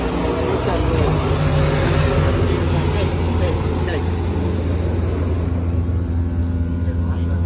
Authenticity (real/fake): real